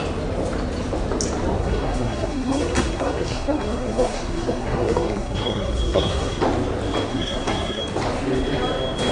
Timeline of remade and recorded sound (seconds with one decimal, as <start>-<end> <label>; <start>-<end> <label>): 0.0-1.6 recorded; 1.6-6.4 remade; 6.4-7.1 recorded; 7.1-7.8 remade; 7.8-9.1 recorded